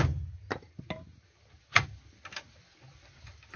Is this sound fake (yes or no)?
no